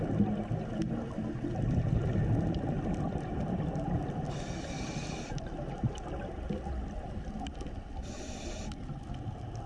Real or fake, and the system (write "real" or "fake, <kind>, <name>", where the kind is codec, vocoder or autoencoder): real